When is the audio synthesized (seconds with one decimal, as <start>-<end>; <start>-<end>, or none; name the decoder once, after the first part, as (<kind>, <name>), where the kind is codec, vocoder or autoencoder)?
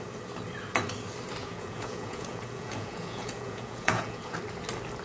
1.4-4.4 (vocoder, Vocos)